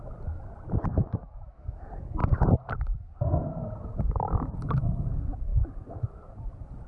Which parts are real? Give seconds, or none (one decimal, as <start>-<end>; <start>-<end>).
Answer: 0.0-0.9; 1.8-6.9